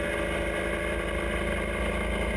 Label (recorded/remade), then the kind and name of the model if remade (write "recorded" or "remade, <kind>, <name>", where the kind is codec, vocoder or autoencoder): recorded